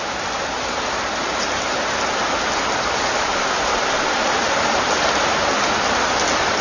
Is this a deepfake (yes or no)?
no